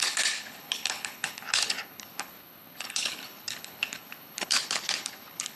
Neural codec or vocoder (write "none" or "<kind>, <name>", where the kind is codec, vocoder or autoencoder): codec, HILCodec